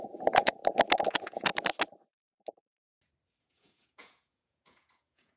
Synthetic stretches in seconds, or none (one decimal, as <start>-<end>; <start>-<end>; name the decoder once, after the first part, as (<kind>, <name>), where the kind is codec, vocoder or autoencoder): 0.0-0.6 (vocoder, Vocos); 1.1-1.5; 3.4-5.4